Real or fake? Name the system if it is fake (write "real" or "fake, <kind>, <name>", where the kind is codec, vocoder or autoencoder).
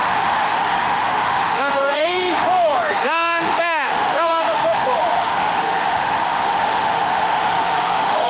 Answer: fake, autoencoder, DAC-VAE